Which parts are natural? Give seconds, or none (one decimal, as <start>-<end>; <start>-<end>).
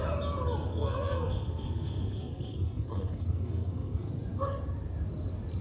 0.0-0.7; 4.1-5.6